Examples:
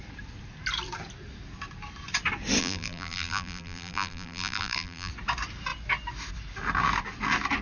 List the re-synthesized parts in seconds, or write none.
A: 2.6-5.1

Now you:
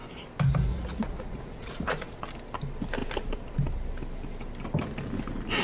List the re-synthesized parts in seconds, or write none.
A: 0.7-2.2

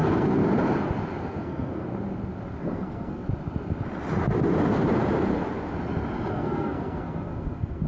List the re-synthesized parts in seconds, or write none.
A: 0.0-0.4; 1.2-1.9; 2.6-3.3; 6.3-7.9

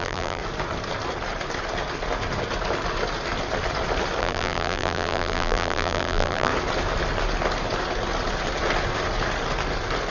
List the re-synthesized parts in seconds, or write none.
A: 0.0-0.4; 4.2-6.5